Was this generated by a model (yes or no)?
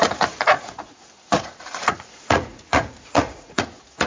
yes